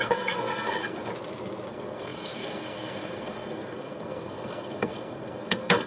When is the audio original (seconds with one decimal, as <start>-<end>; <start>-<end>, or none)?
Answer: 1.1-1.7